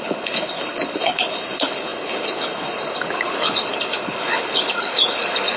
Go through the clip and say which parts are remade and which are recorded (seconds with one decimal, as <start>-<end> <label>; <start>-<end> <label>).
0.0-5.6 remade